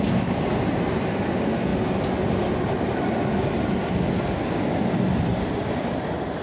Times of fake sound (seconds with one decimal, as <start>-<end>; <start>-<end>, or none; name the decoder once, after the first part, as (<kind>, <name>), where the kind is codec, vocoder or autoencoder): none